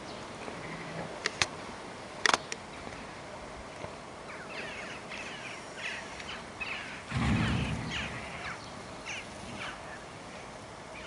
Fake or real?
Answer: real